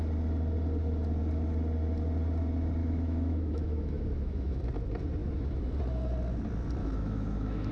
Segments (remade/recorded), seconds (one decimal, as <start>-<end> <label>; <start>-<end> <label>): 0.0-2.8 recorded; 2.8-4.6 remade; 4.6-5.2 recorded; 5.2-5.7 remade; 5.7-6.8 recorded; 6.8-7.7 remade